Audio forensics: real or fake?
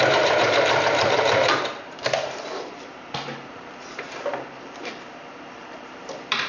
fake